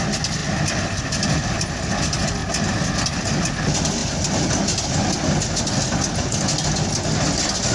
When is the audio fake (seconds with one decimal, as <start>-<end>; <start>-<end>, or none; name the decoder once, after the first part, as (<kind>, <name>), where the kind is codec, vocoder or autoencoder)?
none